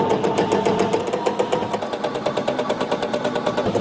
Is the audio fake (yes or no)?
no